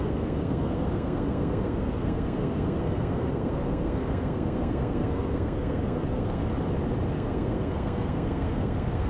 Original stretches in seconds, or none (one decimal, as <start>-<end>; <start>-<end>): 6.4-7.1

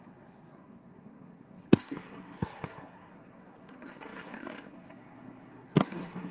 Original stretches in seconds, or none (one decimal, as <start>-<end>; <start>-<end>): none

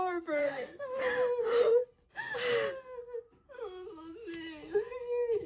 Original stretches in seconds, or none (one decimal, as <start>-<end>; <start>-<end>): 0.0-0.4; 1.0-5.5

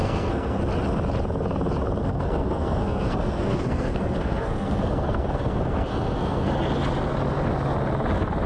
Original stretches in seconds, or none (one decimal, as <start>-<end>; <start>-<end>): 0.6-2.0; 6.5-8.5